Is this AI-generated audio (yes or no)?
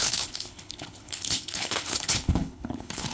yes